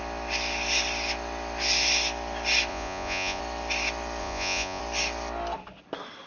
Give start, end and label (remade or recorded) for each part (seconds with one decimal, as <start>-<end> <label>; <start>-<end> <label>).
0.0-2.7 recorded; 2.7-3.4 remade; 3.4-4.2 recorded; 4.2-4.8 remade; 4.8-6.3 recorded